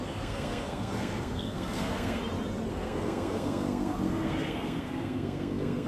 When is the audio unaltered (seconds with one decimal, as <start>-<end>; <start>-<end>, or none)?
2.2-2.7